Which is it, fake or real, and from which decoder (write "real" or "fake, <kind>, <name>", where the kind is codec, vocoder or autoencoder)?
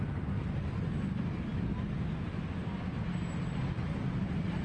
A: real